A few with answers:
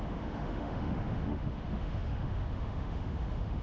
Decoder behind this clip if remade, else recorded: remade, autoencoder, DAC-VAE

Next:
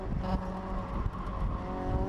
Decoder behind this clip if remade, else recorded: recorded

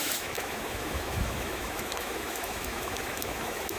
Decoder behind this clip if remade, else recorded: remade, autoencoder, DAC-VAE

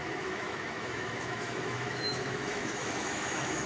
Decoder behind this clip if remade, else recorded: remade, autoencoder, DAC-VAE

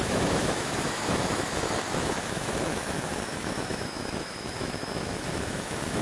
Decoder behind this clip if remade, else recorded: remade, autoencoder, DAC-VAE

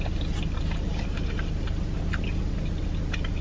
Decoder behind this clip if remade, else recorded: recorded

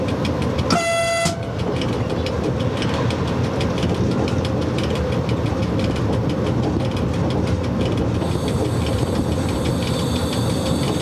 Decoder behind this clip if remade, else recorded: recorded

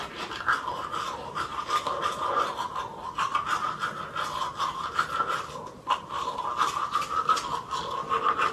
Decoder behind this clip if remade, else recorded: recorded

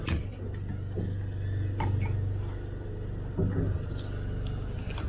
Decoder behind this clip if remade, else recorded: recorded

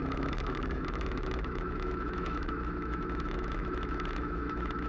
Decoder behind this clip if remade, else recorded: remade, autoencoder, DAC-VAE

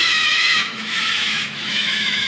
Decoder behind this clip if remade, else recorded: remade, autoencoder, DAC-VAE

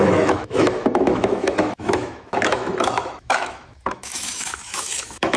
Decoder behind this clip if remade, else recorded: remade, autoencoder, DAC-VAE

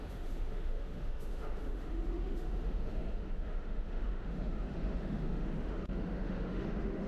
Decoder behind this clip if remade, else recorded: remade, autoencoder, DAC-VAE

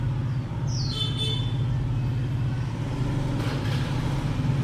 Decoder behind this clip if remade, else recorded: recorded